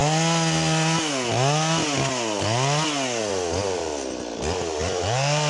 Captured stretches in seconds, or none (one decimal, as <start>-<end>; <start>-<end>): 0.0-5.5